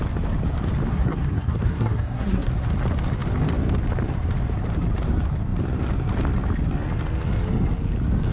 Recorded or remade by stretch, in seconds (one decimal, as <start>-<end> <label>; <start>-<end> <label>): 0.0-0.9 recorded; 0.9-2.5 remade; 2.5-8.3 recorded